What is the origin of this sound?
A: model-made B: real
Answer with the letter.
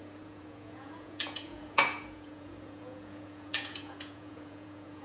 A